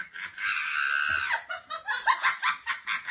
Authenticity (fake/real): real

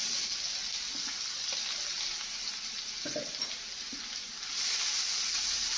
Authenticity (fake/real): real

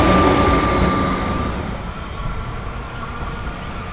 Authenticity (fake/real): real